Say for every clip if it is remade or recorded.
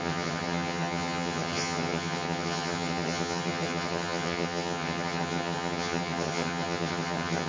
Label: remade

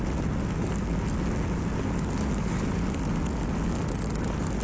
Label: recorded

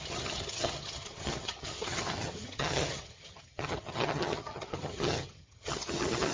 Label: remade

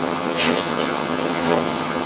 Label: remade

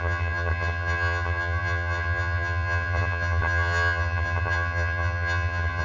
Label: remade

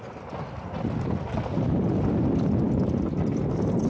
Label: recorded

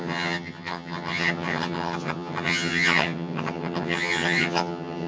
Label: remade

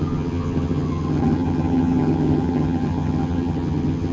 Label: remade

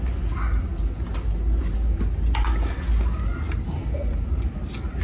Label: recorded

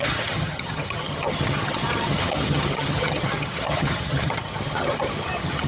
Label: remade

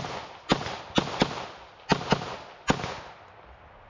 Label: recorded